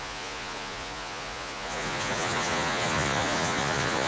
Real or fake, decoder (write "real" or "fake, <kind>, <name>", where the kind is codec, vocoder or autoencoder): fake, vocoder, Vocos